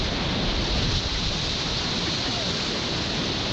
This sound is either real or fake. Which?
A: real